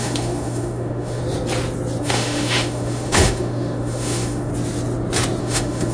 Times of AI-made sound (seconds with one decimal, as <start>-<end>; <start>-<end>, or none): 0.0-1.2; 2.0-4.5; 5.4-5.9